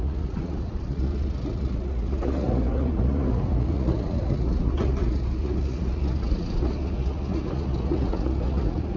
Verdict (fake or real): fake